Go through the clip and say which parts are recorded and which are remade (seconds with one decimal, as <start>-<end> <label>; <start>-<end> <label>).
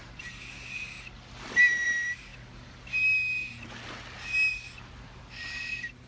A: 0.0-2.3 remade; 2.3-4.5 recorded; 4.5-6.1 remade